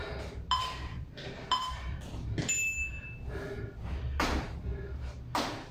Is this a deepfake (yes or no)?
no